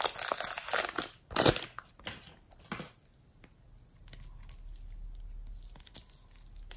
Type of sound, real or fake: real